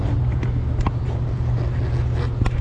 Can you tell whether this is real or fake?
real